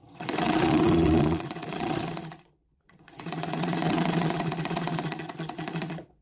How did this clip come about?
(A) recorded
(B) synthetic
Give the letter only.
B